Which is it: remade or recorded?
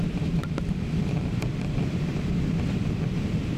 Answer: remade